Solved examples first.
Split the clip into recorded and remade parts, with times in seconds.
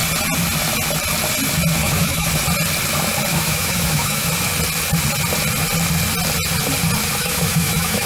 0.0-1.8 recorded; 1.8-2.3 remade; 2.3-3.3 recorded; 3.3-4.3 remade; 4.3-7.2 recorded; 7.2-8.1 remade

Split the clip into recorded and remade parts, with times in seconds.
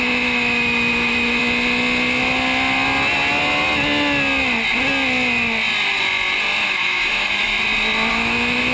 0.0-1.4 remade; 1.4-6.6 recorded; 6.6-7.5 remade; 7.5-8.1 recorded; 8.1-8.7 remade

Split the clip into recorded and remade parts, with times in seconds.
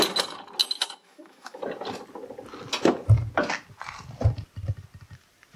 0.0-0.6 recorded; 0.6-1.6 remade; 1.6-5.6 recorded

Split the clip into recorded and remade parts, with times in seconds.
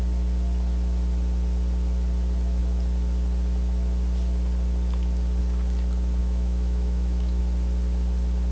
0.0-6.2 recorded; 6.2-7.4 remade; 7.4-8.5 recorded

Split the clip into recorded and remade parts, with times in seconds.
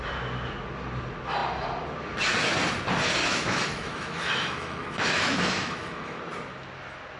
0.0-3.2 recorded; 3.2-6.2 remade; 6.2-7.2 recorded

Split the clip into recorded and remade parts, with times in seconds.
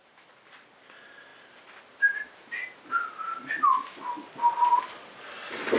0.0-5.8 recorded